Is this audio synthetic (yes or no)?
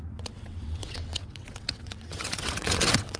yes